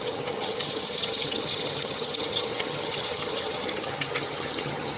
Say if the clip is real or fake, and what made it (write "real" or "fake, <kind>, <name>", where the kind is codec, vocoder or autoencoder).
fake, vocoder, HiFi-GAN